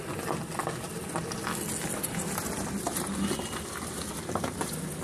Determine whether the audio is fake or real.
real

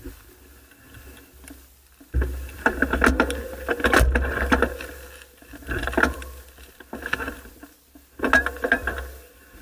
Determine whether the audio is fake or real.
real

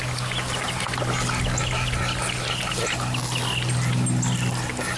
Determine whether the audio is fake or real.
real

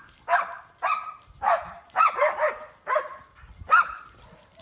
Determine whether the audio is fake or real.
real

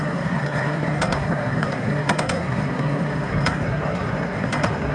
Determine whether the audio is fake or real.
fake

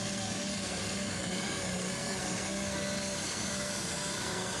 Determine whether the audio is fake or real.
fake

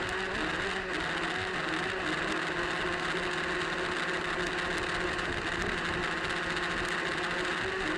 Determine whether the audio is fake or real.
real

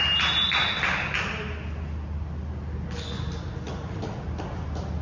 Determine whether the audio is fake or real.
real